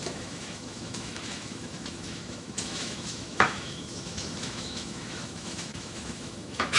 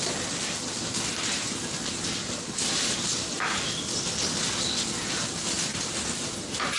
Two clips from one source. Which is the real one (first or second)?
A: second